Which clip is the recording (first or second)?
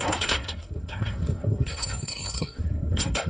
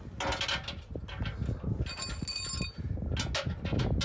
second